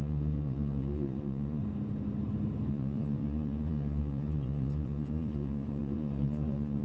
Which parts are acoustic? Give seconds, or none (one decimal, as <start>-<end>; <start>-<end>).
1.6-2.7